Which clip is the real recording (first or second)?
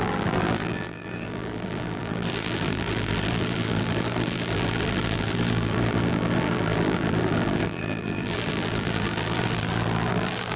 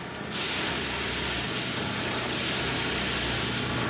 second